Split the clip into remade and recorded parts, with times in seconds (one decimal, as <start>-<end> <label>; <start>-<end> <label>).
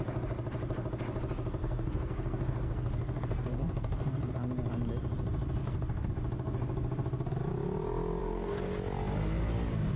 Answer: 0.0-1.6 recorded; 1.6-4.3 remade; 4.3-5.6 recorded; 5.6-6.1 remade; 6.1-8.2 recorded; 8.2-8.7 remade; 8.7-10.0 recorded